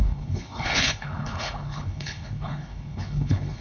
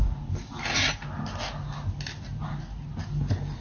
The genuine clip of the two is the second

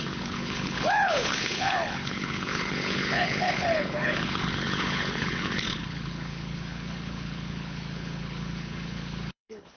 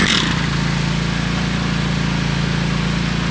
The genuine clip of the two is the second